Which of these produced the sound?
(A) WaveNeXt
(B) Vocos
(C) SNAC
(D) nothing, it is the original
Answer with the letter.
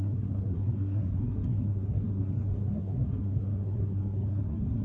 C